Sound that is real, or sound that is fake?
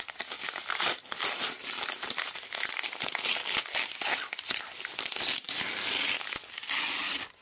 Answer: real